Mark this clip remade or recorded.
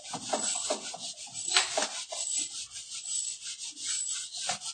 recorded